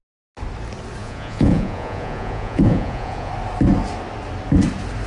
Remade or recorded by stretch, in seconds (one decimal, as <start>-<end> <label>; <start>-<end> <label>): 0.0-1.0 recorded; 1.0-3.3 remade; 3.3-5.1 recorded